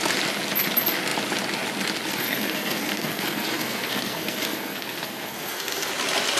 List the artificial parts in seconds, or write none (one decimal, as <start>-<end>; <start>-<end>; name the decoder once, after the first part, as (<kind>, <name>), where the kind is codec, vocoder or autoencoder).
2.1-5.9 (codec, SNAC)